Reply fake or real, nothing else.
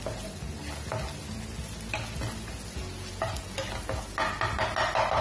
real